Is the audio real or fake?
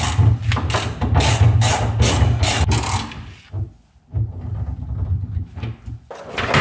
real